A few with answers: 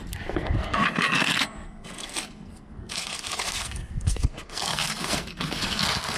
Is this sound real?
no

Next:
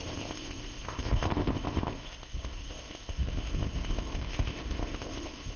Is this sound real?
no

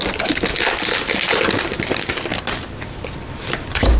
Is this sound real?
yes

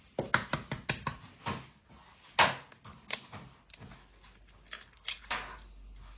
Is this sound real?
yes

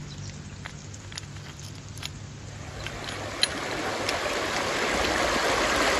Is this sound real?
yes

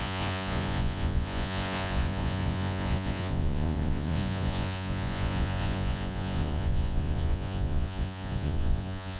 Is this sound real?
no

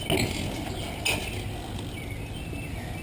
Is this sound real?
yes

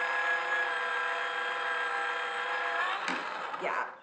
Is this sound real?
yes